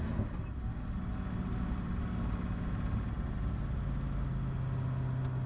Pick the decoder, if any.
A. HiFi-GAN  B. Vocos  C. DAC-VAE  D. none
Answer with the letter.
D